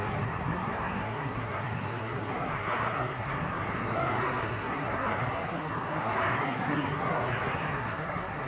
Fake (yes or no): yes